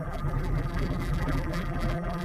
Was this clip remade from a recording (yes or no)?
yes